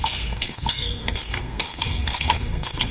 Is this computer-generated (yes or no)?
yes